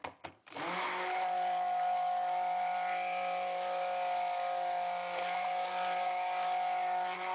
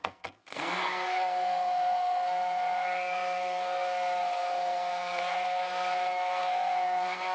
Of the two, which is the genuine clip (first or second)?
first